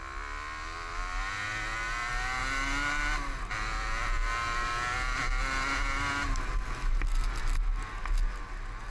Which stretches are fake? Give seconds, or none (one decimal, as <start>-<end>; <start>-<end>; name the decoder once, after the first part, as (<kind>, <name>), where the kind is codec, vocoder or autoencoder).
none